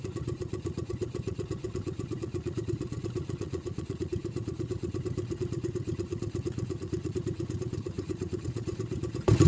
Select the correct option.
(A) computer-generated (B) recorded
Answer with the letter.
A